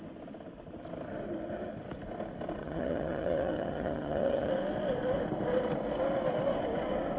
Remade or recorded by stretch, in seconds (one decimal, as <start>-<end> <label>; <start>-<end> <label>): 0.0-2.6 recorded; 2.6-4.5 remade; 4.5-7.2 recorded